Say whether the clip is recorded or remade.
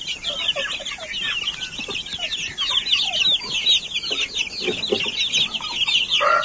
recorded